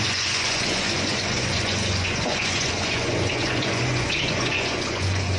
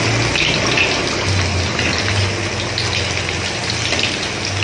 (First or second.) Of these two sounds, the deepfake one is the first